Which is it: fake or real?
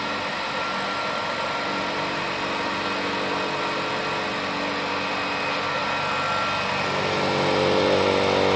real